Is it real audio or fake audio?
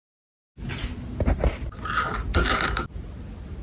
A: real